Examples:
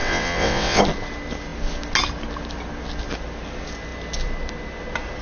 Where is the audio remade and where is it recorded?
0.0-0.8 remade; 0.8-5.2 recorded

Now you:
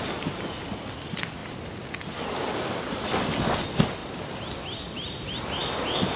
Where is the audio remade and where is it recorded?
0.0-6.2 recorded

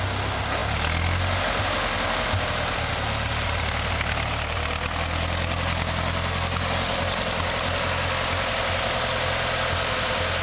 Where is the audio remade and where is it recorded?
0.0-10.4 recorded

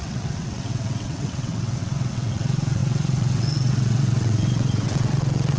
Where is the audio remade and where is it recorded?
0.0-5.6 remade

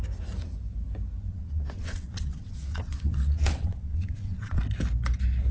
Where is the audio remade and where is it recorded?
0.0-1.3 recorded; 1.3-4.6 remade; 4.6-5.5 recorded

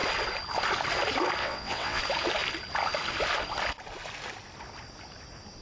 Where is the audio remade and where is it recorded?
0.0-1.4 recorded; 1.4-2.0 remade; 2.0-5.6 recorded